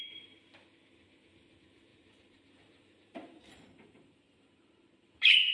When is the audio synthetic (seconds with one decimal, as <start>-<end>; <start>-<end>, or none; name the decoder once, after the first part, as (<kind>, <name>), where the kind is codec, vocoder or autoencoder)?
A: 0.0-5.5 (vocoder, BigVGAN v2)